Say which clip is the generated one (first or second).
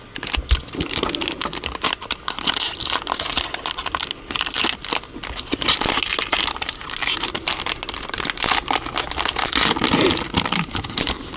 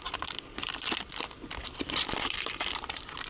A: second